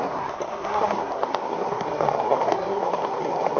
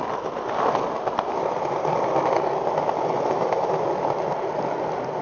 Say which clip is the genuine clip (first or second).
second